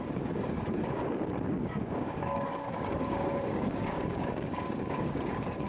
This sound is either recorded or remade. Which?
remade